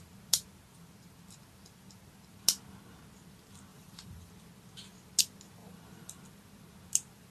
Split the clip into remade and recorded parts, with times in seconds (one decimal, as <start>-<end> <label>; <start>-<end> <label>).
0.0-3.7 recorded; 3.7-4.3 remade; 4.3-5.6 recorded; 5.6-6.2 remade; 6.2-7.3 recorded